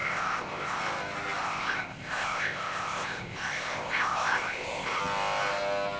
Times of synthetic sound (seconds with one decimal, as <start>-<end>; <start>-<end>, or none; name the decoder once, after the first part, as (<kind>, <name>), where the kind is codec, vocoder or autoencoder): 0.0-0.8 (codec, ZipCodec); 1.4-5.0